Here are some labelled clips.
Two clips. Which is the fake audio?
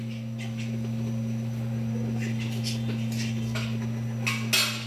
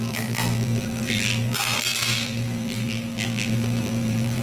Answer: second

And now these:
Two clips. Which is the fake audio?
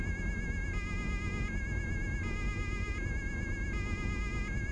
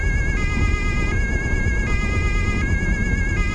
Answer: second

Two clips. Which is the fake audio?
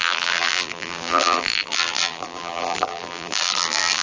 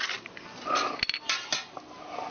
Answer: first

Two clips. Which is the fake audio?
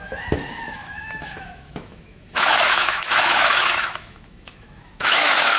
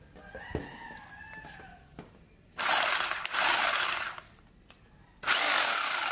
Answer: first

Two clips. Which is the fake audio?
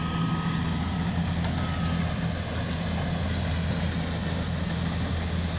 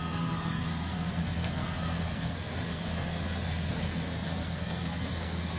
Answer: second